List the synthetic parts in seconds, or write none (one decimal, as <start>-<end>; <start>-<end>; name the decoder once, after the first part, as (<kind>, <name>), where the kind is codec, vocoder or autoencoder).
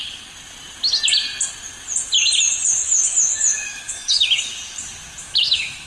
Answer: 2.8-4.5 (autoencoder, DAC-VAE); 5.2-5.9